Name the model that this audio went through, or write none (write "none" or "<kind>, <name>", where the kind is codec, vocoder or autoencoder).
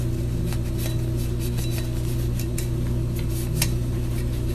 none